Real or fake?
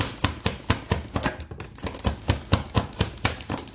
real